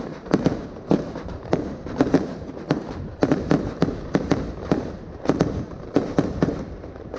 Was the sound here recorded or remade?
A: remade